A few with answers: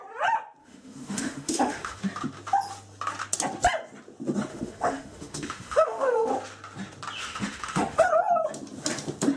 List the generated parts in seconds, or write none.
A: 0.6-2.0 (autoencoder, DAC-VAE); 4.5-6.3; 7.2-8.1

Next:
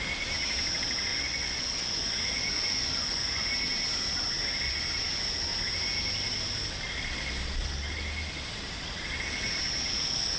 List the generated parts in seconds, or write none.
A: 1.1-3.4 (vocoder, Vocos)

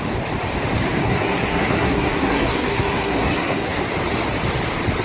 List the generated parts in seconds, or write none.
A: 1.0-3.8 (codec, SNAC)

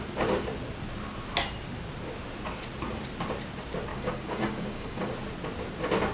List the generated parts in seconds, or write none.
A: 3.9-5.1 (codec, DAC)

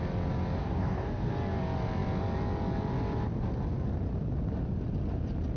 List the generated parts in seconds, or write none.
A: 0.6-1.3 (codec, DAC)

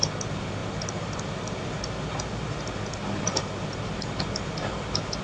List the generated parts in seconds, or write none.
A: none

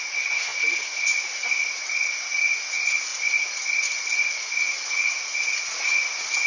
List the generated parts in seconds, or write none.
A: 0.0-3.1 (vocoder, Vocos); 4.6-6.5

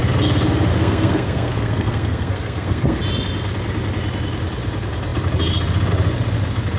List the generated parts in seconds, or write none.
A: 0.7-3.0 (codec, SNAC)